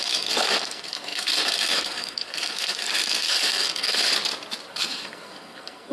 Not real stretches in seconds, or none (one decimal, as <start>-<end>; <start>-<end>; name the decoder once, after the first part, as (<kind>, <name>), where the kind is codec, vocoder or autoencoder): 0.0-4.1 (codec, SNAC); 4.7-5.9